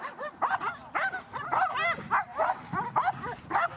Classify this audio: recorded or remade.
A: recorded